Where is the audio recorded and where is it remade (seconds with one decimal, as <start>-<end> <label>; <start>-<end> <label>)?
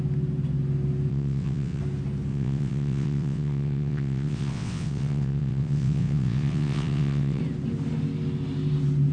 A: 0.0-1.1 recorded; 1.1-1.8 remade; 1.8-2.3 recorded; 2.3-7.4 remade; 7.4-9.1 recorded